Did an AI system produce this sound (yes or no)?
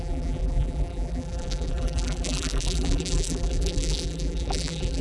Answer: yes